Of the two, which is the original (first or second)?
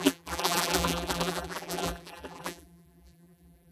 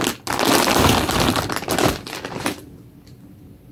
second